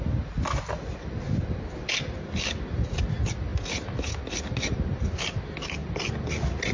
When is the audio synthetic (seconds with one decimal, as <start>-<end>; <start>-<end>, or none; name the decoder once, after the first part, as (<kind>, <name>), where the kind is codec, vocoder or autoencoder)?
none